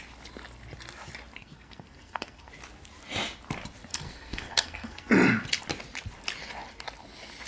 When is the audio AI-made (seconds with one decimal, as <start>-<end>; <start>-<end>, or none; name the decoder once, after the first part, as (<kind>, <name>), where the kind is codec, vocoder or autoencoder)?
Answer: 1.4-2.5 (codec, SNAC); 3.9-5.1